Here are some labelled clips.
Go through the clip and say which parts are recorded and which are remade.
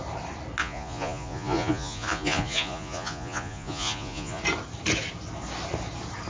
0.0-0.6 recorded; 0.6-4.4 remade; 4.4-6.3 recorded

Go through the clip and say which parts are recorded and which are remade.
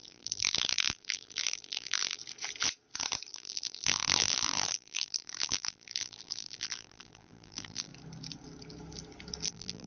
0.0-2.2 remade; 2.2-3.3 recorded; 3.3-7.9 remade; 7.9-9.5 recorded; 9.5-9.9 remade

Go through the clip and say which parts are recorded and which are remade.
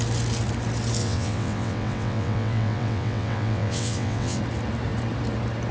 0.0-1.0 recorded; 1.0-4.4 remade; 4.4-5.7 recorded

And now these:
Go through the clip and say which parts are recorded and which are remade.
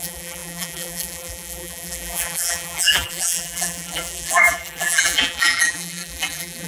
0.0-6.7 remade